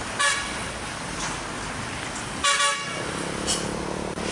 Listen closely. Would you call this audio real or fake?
real